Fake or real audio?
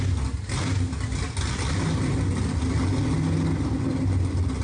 real